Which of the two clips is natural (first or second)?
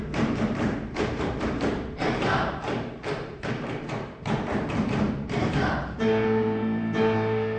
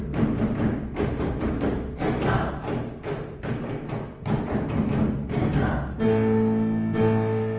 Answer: second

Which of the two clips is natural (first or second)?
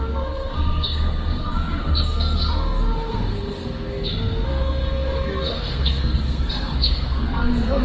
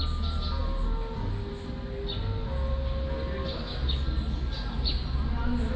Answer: second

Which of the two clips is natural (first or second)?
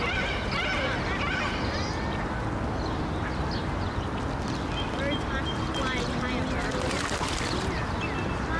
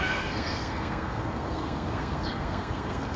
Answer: first